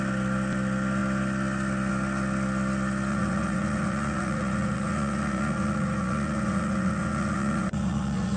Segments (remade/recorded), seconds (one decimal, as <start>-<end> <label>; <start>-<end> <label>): 0.0-3.1 recorded; 3.1-8.4 remade